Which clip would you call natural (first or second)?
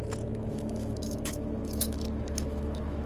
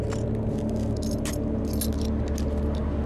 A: second